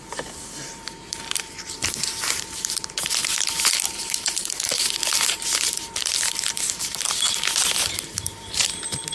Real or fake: fake